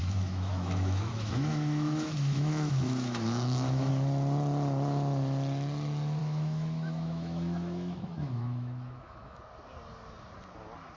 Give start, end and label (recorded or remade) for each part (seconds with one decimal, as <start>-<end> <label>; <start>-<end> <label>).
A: 0.0-3.9 remade; 3.9-6.2 recorded; 6.2-9.4 remade; 9.4-11.0 recorded